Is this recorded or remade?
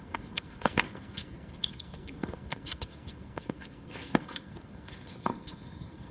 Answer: remade